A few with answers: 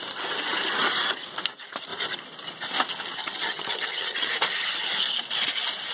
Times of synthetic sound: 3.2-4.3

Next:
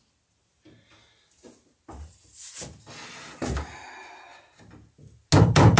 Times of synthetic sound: none

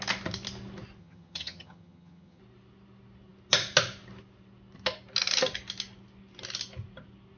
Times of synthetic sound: 1.0-2.4

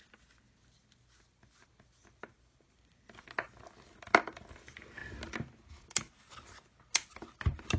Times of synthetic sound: none

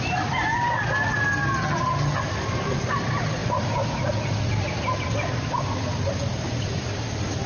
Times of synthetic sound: 1.6-2.2

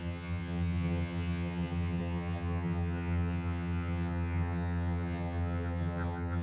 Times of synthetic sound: 0.0-6.4